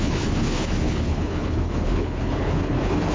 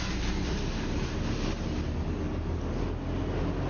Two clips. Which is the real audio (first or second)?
second